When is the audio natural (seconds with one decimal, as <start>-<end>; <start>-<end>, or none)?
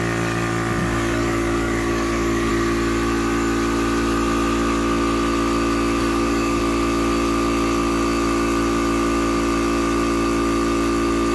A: 0.0-0.8; 2.5-6.0; 6.6-11.3